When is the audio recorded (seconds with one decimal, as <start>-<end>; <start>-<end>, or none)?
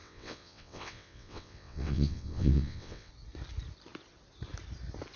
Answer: 3.1-5.2